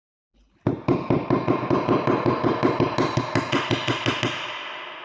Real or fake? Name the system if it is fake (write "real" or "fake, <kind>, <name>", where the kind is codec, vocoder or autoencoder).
real